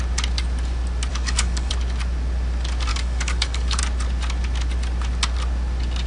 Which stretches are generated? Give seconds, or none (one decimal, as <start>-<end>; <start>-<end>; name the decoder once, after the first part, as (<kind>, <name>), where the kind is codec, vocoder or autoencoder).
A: 1.1-1.7 (codec, DAC); 2.9-3.8